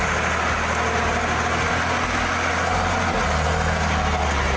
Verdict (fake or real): real